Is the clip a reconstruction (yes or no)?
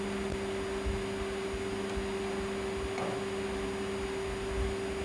no